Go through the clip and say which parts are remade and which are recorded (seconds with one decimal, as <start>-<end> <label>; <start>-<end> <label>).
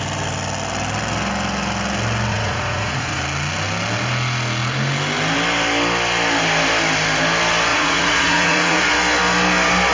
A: 0.0-2.3 recorded; 2.3-3.2 remade; 3.2-7.7 recorded; 7.7-8.8 remade; 8.8-9.9 recorded